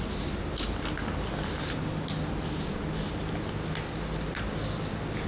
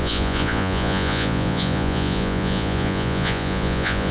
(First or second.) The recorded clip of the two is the first